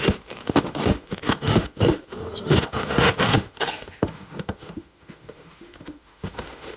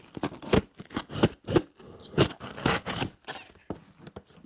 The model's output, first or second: first